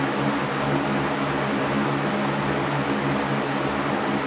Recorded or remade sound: recorded